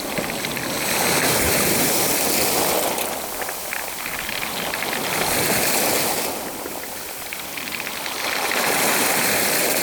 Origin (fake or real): real